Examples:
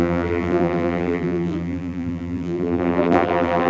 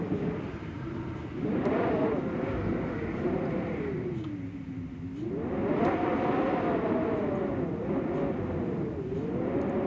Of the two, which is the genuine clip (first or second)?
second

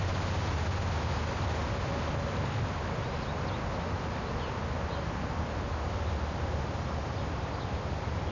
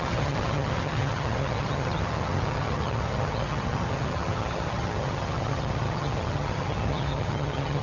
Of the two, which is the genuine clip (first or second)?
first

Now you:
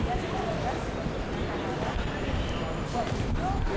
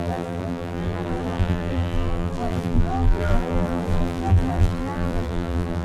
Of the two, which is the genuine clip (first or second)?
first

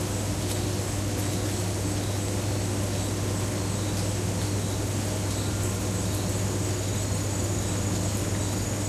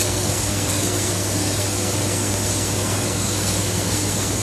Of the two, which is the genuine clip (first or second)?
first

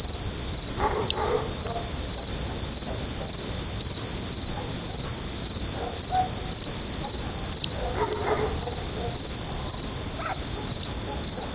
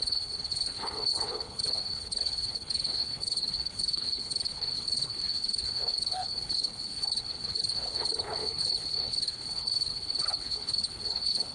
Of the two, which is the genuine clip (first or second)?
first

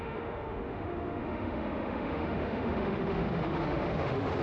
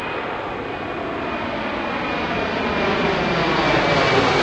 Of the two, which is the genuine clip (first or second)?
second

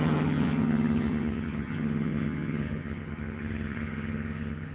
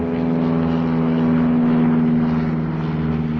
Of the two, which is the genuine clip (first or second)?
second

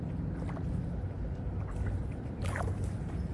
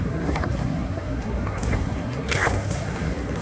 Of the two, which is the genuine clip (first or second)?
first